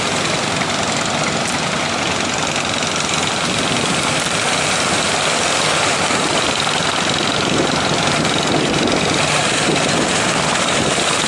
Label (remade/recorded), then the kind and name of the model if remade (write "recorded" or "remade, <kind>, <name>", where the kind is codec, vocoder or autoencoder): recorded